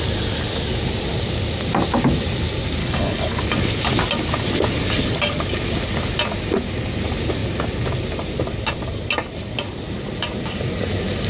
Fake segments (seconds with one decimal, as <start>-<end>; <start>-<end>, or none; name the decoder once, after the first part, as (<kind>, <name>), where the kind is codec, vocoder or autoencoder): 2.8-3.4 (codec, HILCodec)